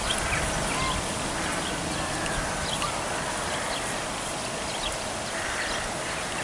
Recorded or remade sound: recorded